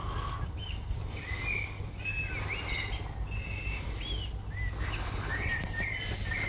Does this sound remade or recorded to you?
recorded